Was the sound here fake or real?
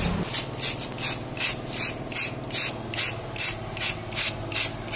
real